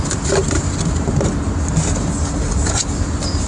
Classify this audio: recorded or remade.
recorded